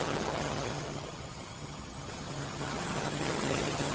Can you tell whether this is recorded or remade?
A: remade